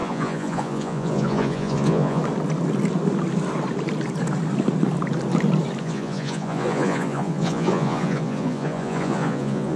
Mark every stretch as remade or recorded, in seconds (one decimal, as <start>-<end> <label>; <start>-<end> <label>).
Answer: 0.0-2.2 remade; 2.2-5.8 recorded; 5.8-9.8 remade